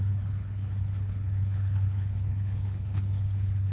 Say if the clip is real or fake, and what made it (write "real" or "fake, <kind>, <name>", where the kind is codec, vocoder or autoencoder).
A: fake, codec, HILCodec